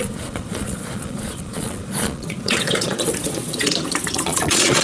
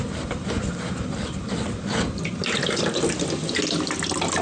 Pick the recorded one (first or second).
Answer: second